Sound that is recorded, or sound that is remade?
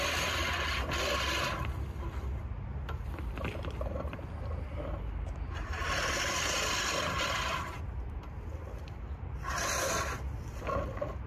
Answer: recorded